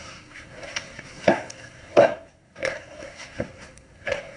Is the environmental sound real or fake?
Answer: fake